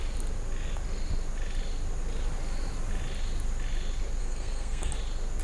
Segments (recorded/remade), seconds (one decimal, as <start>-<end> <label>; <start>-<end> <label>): 0.0-4.2 recorded; 4.2-4.9 remade; 4.9-5.4 recorded